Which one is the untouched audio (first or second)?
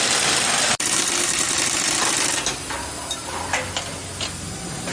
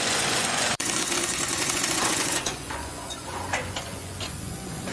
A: first